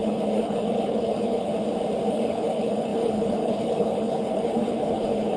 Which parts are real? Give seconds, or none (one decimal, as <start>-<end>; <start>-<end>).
1.5-2.1